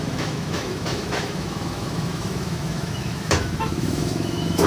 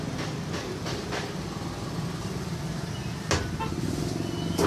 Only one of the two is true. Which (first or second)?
second